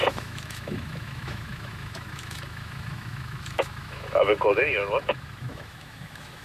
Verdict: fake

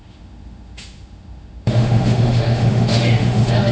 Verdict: fake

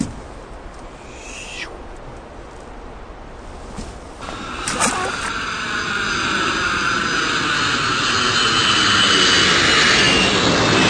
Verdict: real